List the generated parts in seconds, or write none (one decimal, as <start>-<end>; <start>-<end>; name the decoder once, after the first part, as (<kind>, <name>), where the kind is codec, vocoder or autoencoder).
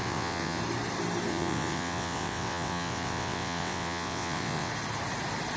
0.0-0.6 (vocoder, WaveNeXt); 1.3-4.7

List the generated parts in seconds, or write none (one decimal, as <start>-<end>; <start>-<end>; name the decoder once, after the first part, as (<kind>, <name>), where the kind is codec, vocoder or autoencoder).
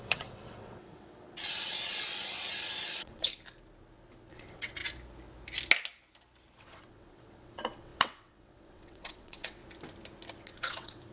0.0-3.3 (vocoder, WaveNeXt); 4.3-4.8; 6.6-9.6; 10.3-11.1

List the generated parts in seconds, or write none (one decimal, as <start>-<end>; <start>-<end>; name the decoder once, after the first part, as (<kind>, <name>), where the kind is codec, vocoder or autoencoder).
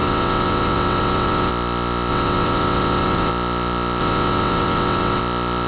0.0-1.5 (vocoder, WaveNeXt); 2.1-3.3; 4.0-5.2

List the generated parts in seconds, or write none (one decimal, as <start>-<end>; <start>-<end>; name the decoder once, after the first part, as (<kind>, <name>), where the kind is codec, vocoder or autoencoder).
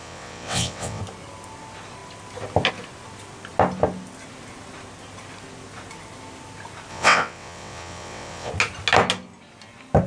0.0-1.0 (vocoder, WaveNeXt); 6.9-8.5